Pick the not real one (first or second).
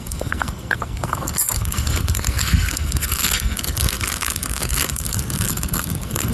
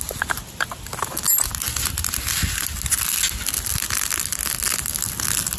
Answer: first